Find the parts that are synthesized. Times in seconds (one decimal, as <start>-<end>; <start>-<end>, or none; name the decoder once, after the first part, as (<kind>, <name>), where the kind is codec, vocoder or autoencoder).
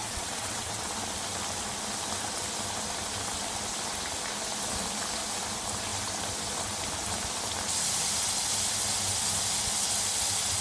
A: 0.0-0.9 (vocoder, WaveNeXt)